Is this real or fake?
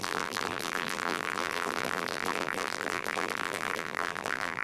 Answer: fake